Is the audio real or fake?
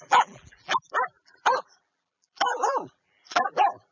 fake